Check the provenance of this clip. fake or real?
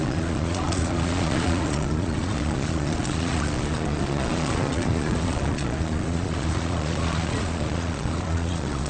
fake